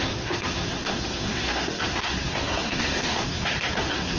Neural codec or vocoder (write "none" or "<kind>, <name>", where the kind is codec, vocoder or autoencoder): codec, SNAC